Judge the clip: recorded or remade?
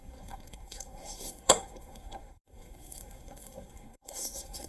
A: remade